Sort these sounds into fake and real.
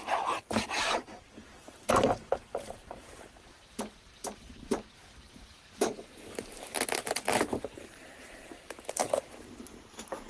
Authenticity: fake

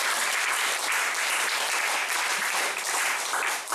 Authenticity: fake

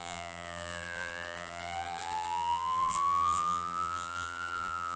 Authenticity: fake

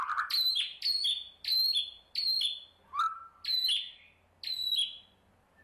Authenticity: real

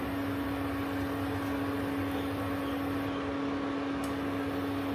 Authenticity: real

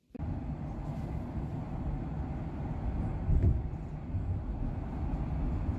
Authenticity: real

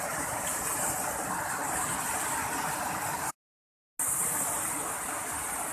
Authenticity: real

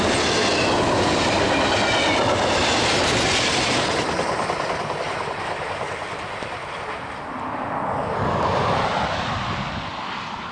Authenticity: real